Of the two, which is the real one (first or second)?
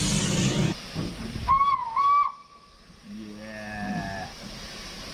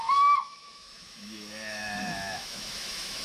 first